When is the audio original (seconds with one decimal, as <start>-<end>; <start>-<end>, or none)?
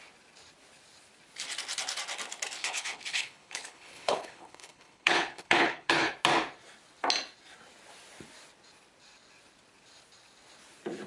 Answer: 0.0-2.6; 6.1-11.1